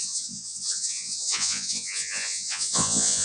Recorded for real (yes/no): no